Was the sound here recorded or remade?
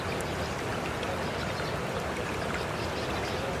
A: recorded